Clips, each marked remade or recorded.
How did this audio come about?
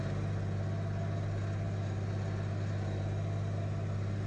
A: recorded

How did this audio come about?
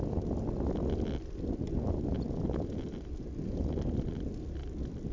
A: recorded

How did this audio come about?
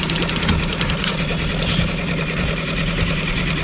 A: remade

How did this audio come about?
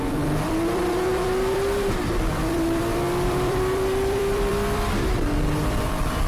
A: remade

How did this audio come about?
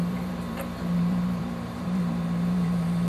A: remade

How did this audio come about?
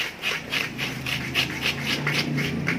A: remade